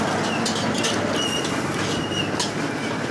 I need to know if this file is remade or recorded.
recorded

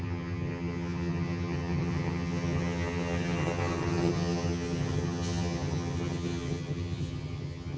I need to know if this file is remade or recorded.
remade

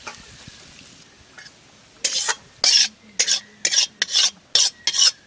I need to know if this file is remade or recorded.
recorded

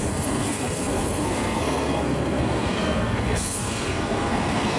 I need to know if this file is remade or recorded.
remade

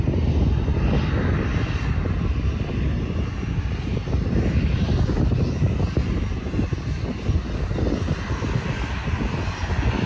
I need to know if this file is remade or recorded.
recorded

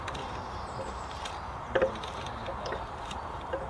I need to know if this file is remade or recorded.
remade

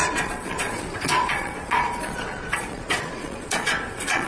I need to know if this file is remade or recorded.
remade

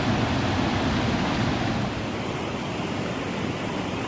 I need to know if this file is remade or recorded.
recorded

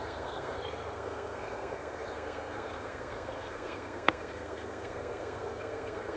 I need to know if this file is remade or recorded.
remade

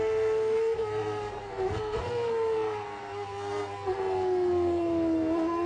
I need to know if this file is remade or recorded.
remade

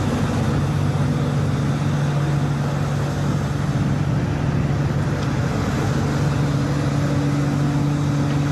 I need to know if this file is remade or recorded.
recorded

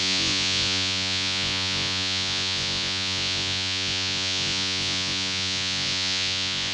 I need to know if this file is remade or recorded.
remade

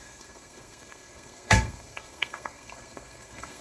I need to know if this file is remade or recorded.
remade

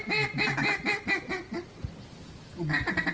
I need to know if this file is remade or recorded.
recorded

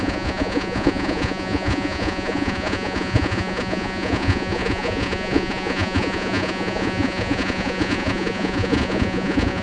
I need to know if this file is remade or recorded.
remade